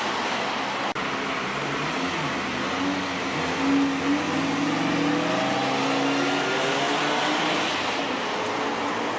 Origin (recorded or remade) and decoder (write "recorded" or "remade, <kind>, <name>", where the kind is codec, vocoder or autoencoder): recorded